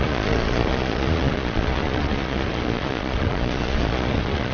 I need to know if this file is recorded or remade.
remade